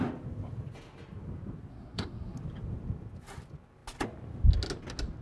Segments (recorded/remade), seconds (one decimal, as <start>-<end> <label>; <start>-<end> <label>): 0.0-1.7 recorded; 1.7-2.4 remade; 2.4-5.2 recorded